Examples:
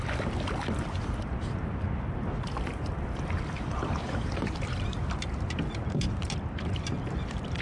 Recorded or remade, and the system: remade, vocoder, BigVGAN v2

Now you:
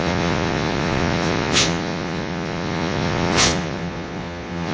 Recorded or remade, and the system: remade, vocoder, Vocos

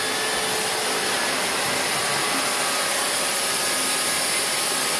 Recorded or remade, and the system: recorded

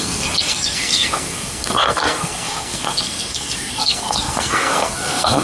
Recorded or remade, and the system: remade, codec, SNAC